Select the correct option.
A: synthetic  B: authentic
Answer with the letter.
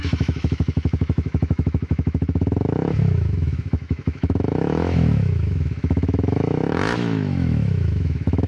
A